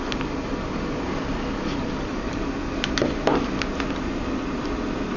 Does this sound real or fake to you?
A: real